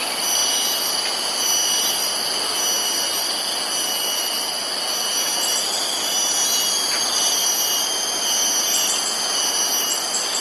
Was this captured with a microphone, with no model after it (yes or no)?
yes